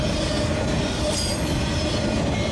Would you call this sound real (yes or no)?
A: yes